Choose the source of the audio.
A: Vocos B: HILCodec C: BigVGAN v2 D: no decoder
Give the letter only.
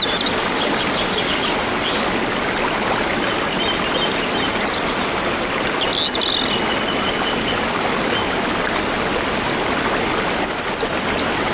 D